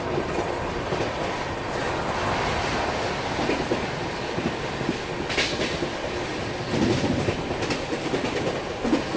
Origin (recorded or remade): recorded